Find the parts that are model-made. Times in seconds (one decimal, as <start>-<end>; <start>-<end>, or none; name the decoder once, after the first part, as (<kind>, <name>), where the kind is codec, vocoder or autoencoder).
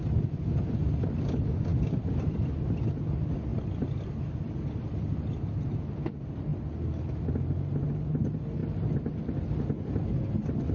none